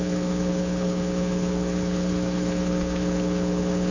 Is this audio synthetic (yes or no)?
yes